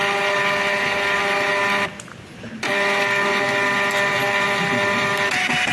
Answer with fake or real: real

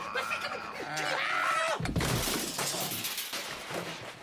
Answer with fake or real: real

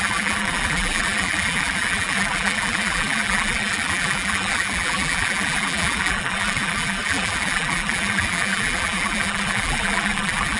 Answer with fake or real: fake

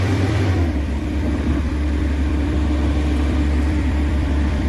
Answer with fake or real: fake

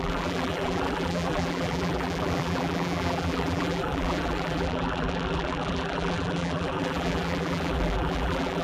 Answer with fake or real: fake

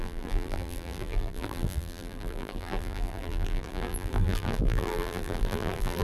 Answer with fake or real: fake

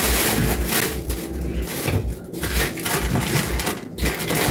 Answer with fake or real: real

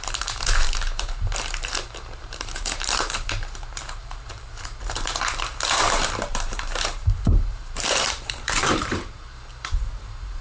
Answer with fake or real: fake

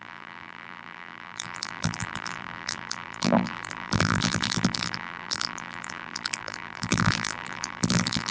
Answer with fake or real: fake